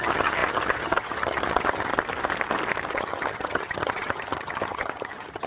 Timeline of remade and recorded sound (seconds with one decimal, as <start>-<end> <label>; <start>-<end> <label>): 0.0-1.9 remade; 1.9-2.9 recorded; 2.9-5.5 remade